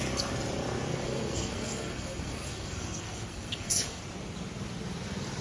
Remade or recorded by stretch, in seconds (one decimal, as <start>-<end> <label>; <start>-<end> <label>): 0.0-0.9 recorded; 0.9-4.0 remade; 4.0-5.4 recorded